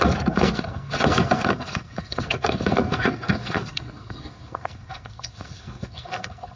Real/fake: fake